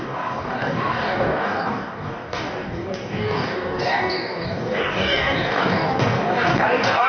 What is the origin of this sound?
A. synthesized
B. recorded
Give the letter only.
A